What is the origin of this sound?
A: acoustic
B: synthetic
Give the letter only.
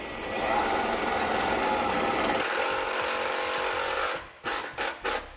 A